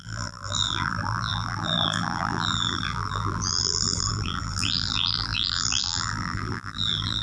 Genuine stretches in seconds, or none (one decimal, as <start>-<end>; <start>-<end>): none